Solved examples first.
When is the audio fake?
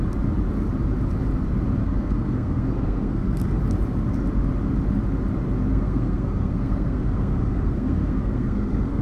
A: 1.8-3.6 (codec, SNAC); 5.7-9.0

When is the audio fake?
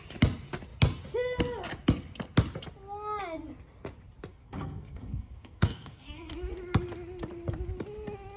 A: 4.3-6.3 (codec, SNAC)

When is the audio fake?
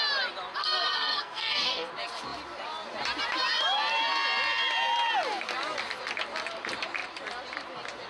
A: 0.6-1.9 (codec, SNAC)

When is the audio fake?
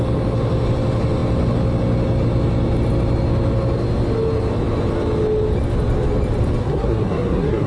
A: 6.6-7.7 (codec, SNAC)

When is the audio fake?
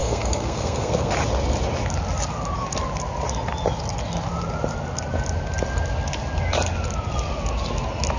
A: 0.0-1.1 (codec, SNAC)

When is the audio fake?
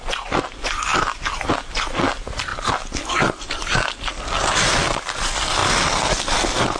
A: none